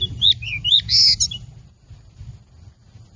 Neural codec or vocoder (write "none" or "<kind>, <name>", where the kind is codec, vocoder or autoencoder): none